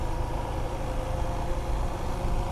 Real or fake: real